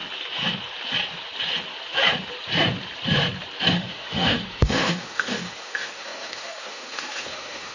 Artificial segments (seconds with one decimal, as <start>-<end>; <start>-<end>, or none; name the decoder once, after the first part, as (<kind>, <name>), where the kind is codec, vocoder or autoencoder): 3.7-7.7 (autoencoder, DAC-VAE)